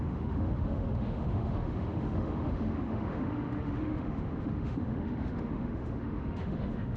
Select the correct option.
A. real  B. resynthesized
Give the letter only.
B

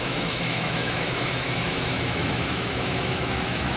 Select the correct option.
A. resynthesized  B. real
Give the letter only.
A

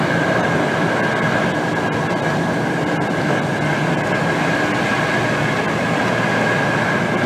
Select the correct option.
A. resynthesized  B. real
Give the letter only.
B